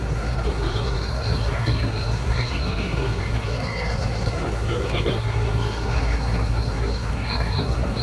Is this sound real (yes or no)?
no